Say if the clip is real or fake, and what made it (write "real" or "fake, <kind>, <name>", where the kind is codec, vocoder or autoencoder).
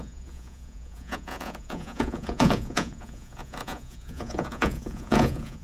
fake, vocoder, Vocos